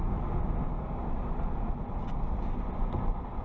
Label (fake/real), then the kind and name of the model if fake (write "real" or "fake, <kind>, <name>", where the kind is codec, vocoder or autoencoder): real